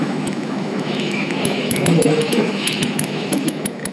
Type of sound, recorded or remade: remade